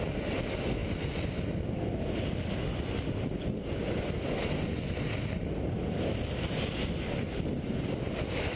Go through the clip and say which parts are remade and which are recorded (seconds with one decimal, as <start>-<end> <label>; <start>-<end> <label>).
0.0-8.6 recorded